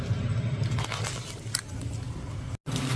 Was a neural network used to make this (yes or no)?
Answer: no